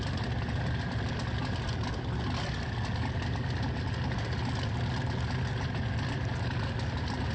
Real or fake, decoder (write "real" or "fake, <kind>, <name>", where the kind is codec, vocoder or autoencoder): real